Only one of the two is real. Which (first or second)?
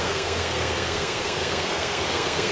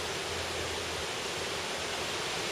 second